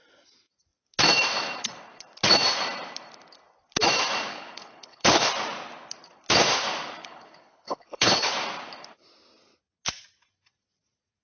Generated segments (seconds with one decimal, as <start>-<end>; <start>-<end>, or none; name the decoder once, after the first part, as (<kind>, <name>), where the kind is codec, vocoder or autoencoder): 4.3-5.3 (codec, HILCodec); 7.0-8.3